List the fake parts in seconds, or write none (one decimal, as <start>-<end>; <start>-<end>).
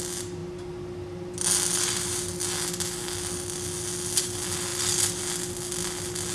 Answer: none